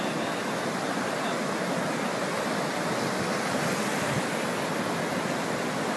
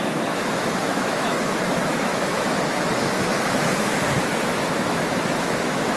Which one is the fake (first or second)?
second